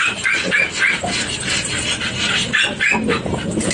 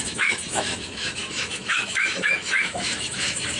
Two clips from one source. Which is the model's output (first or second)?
second